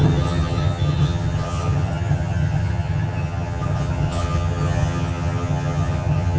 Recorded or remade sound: remade